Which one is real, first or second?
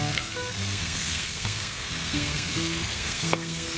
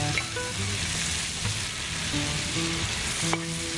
second